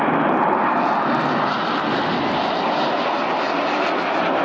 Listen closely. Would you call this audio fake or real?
real